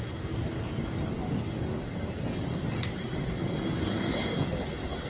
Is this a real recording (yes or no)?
yes